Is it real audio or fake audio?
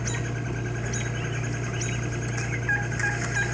real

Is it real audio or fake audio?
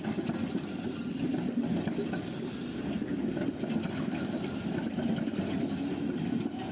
real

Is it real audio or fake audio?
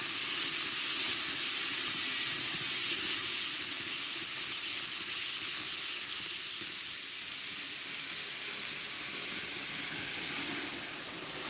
real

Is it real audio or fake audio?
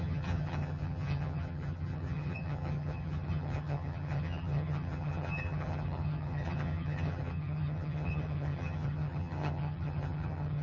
fake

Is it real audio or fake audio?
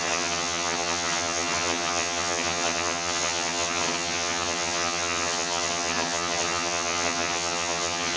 fake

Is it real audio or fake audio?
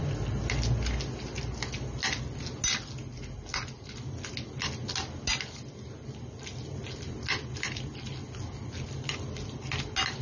real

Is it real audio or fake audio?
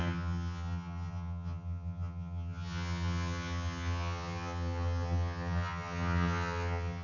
fake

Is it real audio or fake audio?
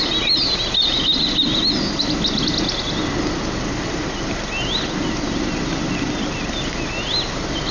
real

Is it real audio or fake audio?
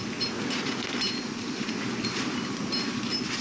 real